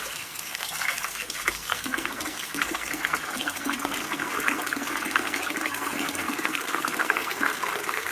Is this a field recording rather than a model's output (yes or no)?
no